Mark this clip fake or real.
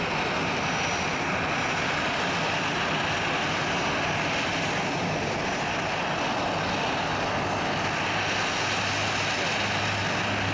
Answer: real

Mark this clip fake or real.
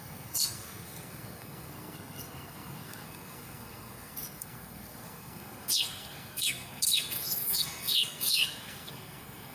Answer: fake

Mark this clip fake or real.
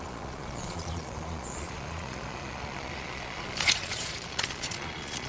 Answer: fake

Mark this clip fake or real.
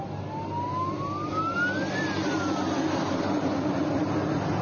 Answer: real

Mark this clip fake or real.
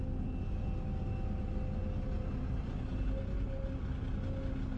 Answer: real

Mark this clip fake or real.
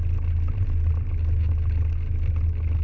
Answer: real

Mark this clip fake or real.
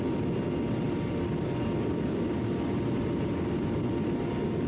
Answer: real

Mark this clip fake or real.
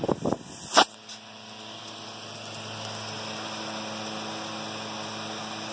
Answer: real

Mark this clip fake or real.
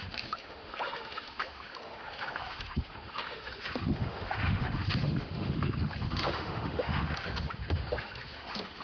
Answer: fake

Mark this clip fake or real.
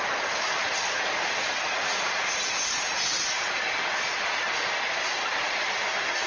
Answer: real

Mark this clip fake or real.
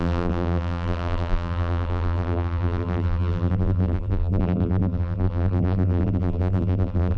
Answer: fake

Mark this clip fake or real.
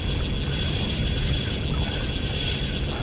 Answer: real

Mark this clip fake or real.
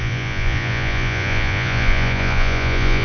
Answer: fake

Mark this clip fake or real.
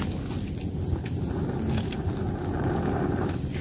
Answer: real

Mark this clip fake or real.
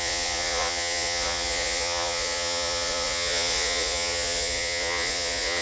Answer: fake